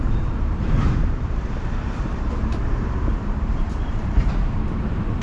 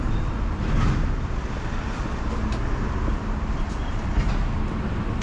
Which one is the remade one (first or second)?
first